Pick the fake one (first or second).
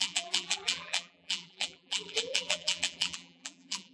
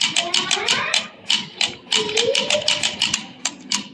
first